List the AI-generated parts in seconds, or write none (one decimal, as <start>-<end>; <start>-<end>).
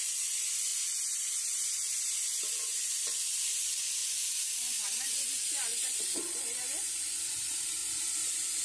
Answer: 4.0-7.2